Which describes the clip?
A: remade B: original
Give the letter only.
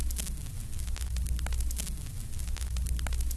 B